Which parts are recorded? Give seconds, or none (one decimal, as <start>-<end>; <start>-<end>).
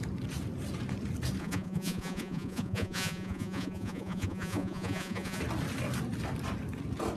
0.0-1.4; 5.4-7.2